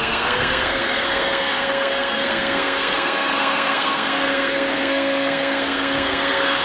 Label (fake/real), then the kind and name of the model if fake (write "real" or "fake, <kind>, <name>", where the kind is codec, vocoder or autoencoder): fake, codec, SNAC